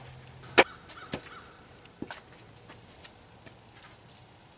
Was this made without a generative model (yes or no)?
yes